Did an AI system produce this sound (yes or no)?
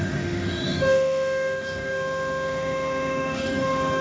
yes